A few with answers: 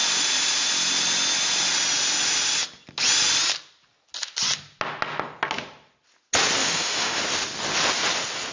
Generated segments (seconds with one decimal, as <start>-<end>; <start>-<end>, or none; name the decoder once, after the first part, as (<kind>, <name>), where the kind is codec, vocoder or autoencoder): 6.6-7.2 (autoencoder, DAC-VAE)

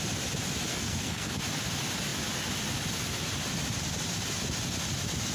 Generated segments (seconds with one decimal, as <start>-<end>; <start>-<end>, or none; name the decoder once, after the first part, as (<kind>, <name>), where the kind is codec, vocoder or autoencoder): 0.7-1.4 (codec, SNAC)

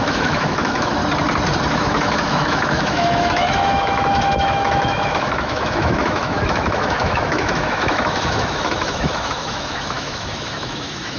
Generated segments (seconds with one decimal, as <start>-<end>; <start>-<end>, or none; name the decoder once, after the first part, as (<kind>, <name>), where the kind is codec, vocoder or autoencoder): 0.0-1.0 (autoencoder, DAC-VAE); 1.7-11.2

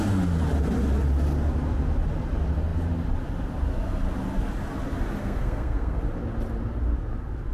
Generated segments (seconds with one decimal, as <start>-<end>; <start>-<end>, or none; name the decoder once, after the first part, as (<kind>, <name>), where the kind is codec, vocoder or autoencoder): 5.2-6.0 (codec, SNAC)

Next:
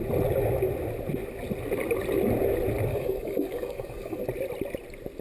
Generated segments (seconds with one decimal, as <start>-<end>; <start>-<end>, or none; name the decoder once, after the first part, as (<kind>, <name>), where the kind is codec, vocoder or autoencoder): 2.9-4.2 (codec, DAC)